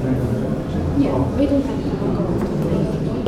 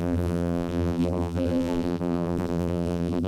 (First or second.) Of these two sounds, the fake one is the second